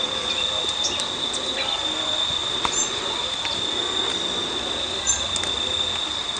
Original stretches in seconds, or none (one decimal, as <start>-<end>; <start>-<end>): 0.0-6.4